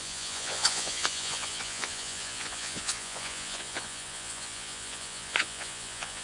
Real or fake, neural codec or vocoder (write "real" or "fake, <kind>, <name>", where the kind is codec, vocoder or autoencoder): fake, vocoder, Vocos